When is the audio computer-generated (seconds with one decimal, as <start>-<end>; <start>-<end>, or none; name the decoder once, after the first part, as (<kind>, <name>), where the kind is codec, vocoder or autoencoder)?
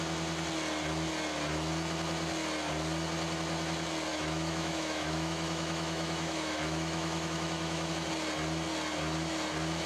4.1-7.9 (autoencoder, DAC-VAE)